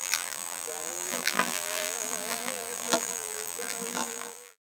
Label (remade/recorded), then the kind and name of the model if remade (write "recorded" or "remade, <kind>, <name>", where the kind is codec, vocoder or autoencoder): remade, vocoder, BigVGAN v2